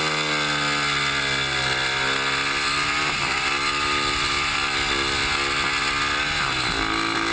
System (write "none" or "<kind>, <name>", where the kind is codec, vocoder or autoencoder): none